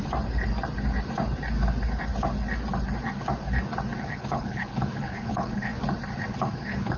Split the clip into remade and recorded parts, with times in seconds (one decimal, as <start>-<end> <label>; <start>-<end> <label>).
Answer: 0.0-4.0 recorded; 4.0-5.7 remade; 5.7-6.3 recorded; 6.3-7.0 remade